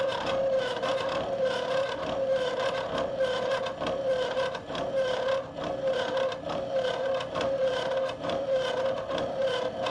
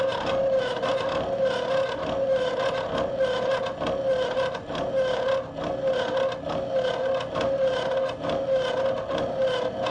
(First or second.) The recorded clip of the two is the second